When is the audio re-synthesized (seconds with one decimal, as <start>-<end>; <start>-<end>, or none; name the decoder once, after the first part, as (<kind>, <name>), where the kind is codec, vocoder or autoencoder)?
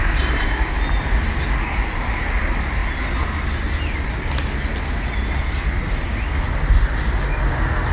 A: none